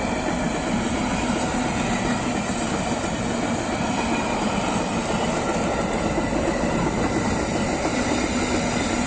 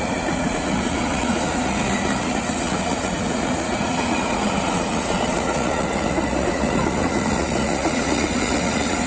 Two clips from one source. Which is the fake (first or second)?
second